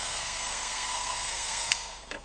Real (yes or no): no